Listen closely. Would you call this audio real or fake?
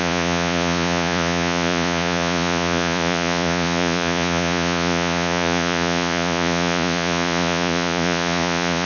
fake